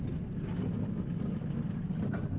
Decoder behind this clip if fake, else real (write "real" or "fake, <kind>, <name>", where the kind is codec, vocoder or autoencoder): real